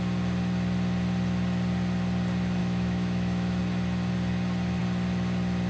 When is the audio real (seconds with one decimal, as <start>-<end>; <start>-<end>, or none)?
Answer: 0.0-2.6; 3.6-5.7